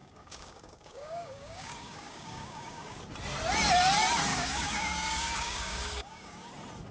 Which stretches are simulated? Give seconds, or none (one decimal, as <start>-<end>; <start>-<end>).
0.0-3.0; 4.3-6.5